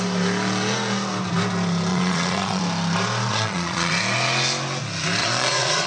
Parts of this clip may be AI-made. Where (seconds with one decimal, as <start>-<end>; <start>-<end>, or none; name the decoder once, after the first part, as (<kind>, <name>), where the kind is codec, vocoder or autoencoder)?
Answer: 1.9-2.6 (vocoder, Vocos); 3.3-3.9; 5.2-5.9